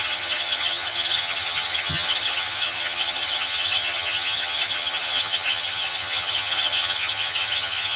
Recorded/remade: remade